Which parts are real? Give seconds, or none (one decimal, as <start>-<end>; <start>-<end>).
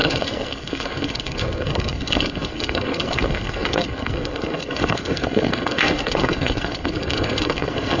none